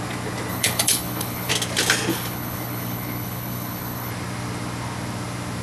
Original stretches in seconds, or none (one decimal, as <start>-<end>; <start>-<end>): 0.0-0.5; 1.5-2.1; 4.1-5.6